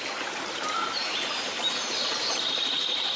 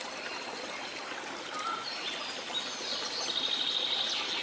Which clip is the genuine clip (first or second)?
second